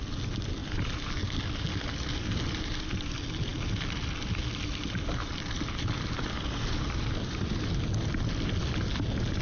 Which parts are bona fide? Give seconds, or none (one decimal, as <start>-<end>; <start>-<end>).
0.0-9.4